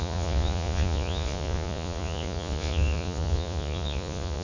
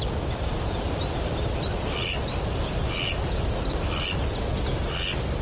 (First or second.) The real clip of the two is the second